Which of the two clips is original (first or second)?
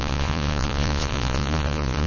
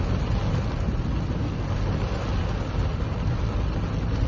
second